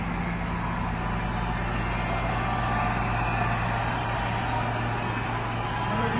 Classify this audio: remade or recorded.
recorded